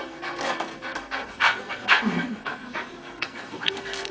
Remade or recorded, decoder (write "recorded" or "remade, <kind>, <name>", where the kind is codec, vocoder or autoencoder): remade, codec, SNAC